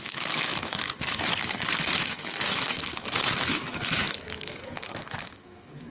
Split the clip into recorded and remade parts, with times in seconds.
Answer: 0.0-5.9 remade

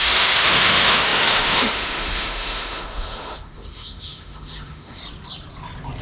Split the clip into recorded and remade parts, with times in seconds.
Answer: 0.0-5.0 remade; 5.0-6.0 recorded

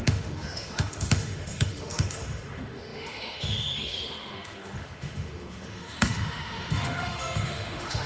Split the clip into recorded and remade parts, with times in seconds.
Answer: 0.0-8.1 remade

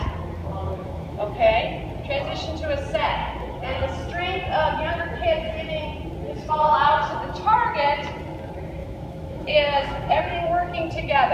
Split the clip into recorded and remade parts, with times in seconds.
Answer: 0.0-0.4 recorded; 0.4-1.6 remade; 1.6-8.8 recorded; 8.8-10.2 remade; 10.2-11.3 recorded

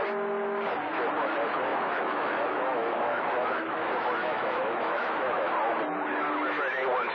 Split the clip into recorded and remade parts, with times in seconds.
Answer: 0.0-1.7 recorded; 1.7-5.5 remade; 5.5-7.1 recorded